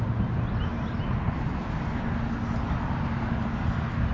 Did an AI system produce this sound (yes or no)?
no